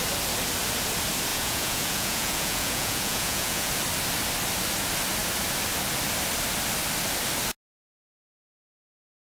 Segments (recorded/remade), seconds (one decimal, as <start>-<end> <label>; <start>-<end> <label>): 0.0-1.3 recorded; 1.3-3.7 remade; 3.7-9.3 recorded

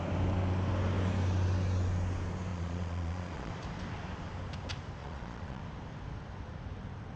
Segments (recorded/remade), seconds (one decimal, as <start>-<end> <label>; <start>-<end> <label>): 0.0-2.5 recorded; 2.5-3.5 remade; 3.5-5.0 recorded; 5.0-5.6 remade; 5.6-7.2 recorded

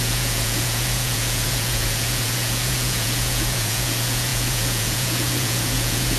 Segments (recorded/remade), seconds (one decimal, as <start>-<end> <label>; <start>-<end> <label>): 0.0-6.2 remade

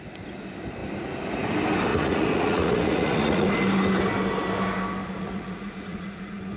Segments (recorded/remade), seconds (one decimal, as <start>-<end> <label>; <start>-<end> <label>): 0.0-1.9 recorded; 1.9-3.5 remade; 3.5-5.0 recorded; 5.0-6.6 remade

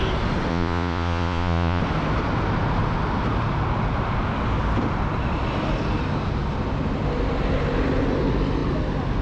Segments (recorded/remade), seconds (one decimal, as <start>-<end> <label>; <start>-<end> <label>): 0.0-0.5 recorded; 0.5-1.8 remade; 1.8-9.2 recorded

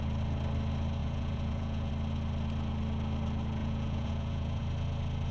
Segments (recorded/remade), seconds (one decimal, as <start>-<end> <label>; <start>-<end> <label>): 0.0-1.0 recorded; 1.0-1.9 remade; 1.9-3.6 recorded; 3.6-4.6 remade; 4.6-5.3 recorded

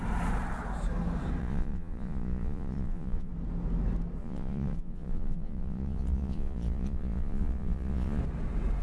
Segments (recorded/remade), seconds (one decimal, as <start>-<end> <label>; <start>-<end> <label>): 0.0-1.4 recorded; 1.4-3.3 remade; 3.3-4.2 recorded; 4.2-8.2 remade; 8.2-8.8 recorded